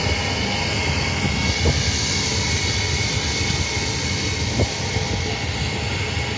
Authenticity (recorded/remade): recorded